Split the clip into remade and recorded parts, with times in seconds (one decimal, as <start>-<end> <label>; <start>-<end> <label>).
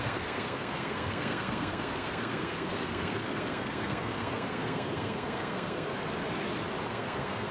0.0-5.9 remade; 5.9-6.9 recorded; 6.9-7.5 remade